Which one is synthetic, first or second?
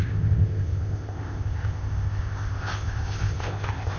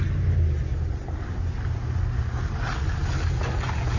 first